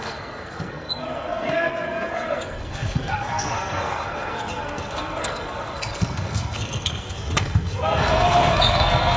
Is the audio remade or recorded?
remade